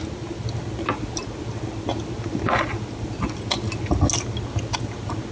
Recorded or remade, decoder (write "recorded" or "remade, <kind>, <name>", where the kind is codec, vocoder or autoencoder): recorded